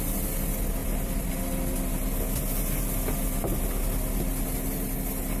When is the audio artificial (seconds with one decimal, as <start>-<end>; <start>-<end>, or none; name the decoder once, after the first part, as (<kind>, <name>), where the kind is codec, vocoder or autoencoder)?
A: 0.8-1.3 (vocoder, BigVGAN v2)